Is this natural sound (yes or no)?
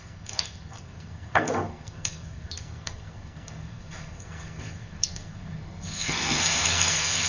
no